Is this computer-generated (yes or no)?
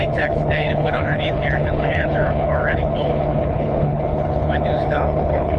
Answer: yes